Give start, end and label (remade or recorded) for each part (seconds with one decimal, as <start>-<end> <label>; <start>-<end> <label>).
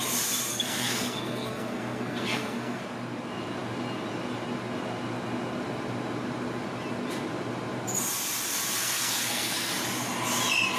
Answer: 0.0-0.5 recorded; 0.5-2.8 remade; 2.8-8.8 recorded; 8.8-9.7 remade; 9.7-10.8 recorded